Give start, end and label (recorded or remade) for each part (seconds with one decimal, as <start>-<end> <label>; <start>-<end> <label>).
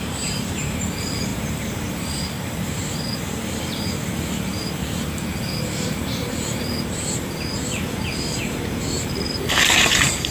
0.0-10.3 remade